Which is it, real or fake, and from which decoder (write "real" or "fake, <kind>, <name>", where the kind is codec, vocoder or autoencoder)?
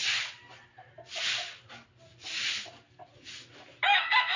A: real